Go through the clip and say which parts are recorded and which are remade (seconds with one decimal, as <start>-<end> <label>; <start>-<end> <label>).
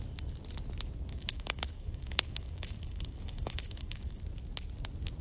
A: 0.0-1.1 recorded; 1.1-4.2 remade; 4.2-5.2 recorded